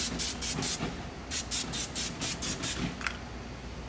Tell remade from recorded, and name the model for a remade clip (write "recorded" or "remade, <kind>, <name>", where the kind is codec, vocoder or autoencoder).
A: recorded